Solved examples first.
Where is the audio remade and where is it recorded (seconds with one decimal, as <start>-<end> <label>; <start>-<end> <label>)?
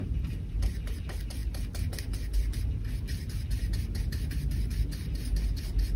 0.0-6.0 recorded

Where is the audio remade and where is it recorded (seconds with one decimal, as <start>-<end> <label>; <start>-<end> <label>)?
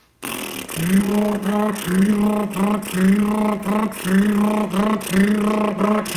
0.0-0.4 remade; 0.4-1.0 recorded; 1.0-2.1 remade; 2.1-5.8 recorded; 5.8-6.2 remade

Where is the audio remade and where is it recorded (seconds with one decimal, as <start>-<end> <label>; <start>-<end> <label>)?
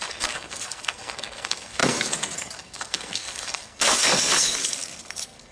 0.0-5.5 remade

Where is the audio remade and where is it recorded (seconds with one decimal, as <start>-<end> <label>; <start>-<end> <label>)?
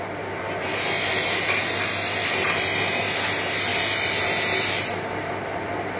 0.0-1.6 recorded; 1.6-2.9 remade; 2.9-3.7 recorded; 3.7-5.3 remade; 5.3-6.0 recorded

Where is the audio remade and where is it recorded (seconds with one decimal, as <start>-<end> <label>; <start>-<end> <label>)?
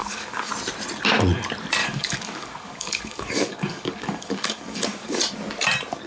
0.0-0.5 remade; 0.5-1.8 recorded; 1.8-5.2 remade; 5.2-6.1 recorded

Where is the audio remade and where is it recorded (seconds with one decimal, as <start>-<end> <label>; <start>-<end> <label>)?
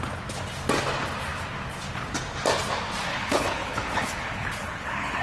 0.0-3.1 recorded; 3.1-5.2 remade